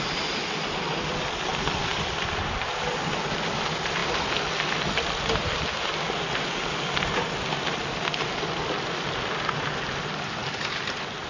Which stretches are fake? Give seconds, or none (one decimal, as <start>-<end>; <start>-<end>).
1.9-3.0